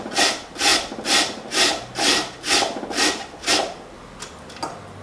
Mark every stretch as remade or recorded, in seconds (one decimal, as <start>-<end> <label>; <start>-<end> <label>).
0.0-5.0 recorded